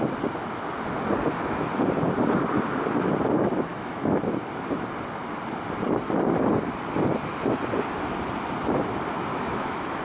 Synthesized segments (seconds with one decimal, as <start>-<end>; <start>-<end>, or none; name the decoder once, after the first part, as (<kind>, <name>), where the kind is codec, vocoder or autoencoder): 3.7-4.2 (autoencoder, DAC-VAE); 9.3-10.0